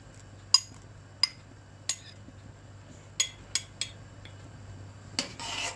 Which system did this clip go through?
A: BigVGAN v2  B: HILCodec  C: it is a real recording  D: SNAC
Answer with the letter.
C